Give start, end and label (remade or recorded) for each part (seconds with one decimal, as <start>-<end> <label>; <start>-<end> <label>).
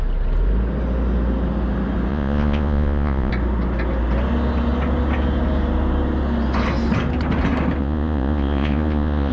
0.0-2.1 recorded; 2.1-3.3 remade; 3.3-7.8 recorded; 7.8-9.3 remade